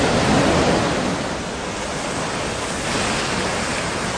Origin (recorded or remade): recorded